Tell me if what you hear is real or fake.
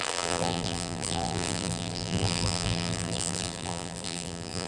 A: fake